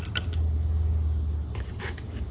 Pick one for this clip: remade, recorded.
recorded